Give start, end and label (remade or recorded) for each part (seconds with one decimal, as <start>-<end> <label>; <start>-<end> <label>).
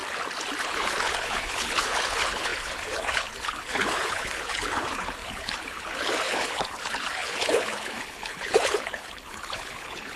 0.0-0.6 recorded; 0.6-10.2 remade